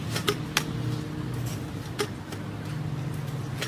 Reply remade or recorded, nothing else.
recorded